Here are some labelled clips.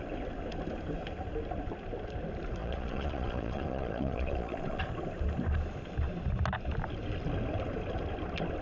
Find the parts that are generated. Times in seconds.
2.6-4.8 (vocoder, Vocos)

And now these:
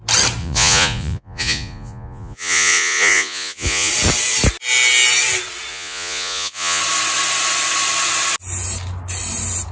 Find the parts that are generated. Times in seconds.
0.4-3.9 (vocoder, Vocos); 5.7-6.8